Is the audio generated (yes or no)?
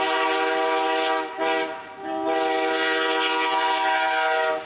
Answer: no